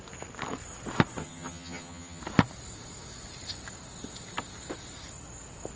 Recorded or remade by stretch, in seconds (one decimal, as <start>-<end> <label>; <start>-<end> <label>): 0.0-1.2 recorded; 1.2-2.2 remade; 2.2-5.8 recorded